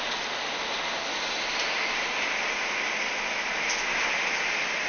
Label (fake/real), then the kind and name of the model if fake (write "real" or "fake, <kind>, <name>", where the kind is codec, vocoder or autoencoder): real